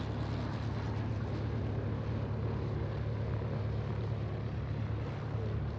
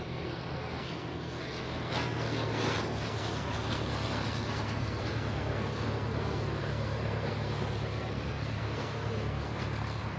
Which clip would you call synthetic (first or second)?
second